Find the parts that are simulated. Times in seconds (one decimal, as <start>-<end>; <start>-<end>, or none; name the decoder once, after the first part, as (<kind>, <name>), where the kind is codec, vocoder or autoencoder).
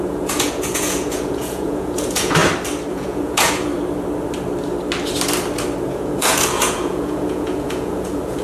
0.0-2.4 (vocoder, Vocos); 2.9-3.7; 5.8-8.4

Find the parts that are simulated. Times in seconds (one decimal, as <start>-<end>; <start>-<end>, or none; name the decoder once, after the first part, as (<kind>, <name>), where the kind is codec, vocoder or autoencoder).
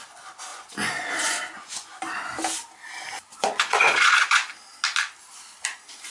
0.5-2.0 (vocoder, Vocos); 3.3-4.5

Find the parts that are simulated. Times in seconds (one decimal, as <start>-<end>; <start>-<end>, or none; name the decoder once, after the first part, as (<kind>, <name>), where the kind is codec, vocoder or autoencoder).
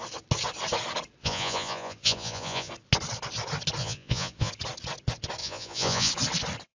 1.2-2.7 (vocoder, Vocos); 3.8-4.5; 5.4-6.1